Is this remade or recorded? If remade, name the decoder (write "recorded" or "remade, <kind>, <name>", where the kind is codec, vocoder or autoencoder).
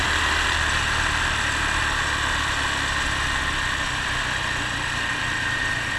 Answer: recorded